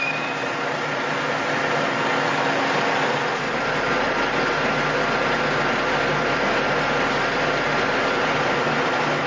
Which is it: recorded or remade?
recorded